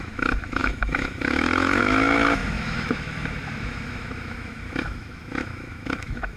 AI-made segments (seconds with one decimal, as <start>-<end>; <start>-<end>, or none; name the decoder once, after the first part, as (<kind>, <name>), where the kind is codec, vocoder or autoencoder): 0.0-6.4 (autoencoder, DAC-VAE)